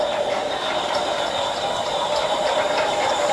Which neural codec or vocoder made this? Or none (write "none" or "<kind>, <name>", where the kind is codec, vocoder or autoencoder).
vocoder, BigVGAN v2